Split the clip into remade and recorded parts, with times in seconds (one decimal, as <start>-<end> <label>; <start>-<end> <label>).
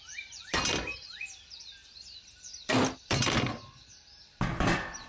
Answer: 0.0-5.1 remade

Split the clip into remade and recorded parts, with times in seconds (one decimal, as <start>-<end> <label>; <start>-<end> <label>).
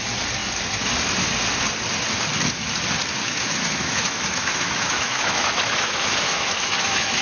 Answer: 0.0-3.2 recorded; 3.2-7.2 remade